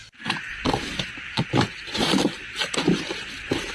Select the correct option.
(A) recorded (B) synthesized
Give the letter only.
A